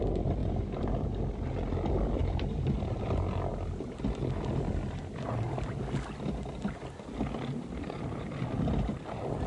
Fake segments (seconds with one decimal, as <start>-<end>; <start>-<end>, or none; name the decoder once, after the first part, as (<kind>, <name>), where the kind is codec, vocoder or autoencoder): 0.4-1.2 (vocoder, BigVGAN v2); 2.2-2.7